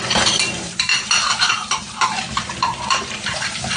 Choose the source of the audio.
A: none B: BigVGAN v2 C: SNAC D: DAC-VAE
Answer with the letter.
B